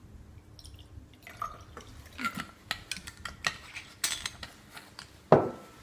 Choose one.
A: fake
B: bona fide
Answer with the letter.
B